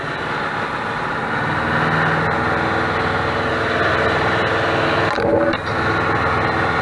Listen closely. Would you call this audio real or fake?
real